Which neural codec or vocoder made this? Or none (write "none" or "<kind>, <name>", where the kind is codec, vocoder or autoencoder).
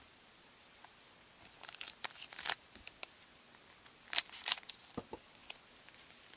none